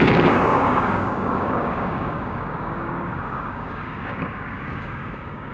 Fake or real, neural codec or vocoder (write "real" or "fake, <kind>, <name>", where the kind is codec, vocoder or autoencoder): fake, codec, DAC